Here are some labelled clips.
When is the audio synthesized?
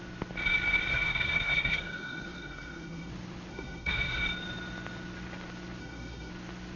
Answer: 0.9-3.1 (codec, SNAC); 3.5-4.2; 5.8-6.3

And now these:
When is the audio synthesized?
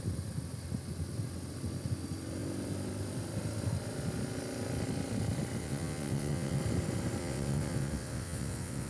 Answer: 5.6-6.6 (vocoder, WaveNeXt); 7.2-8.9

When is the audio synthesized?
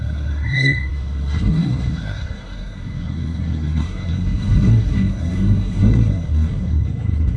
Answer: 0.0-7.4 (codec, SNAC)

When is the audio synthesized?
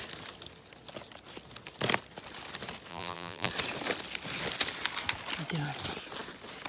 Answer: 2.9-3.5 (vocoder, BigVGAN v2)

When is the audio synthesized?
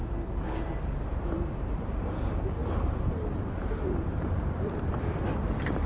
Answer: 2.6-5.2 (vocoder, BigVGAN v2)